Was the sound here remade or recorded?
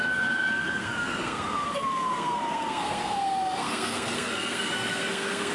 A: remade